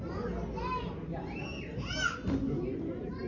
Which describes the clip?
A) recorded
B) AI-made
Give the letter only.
A